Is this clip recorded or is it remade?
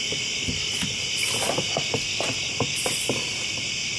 recorded